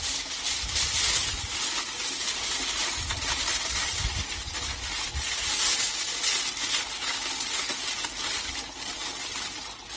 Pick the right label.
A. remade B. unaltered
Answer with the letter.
B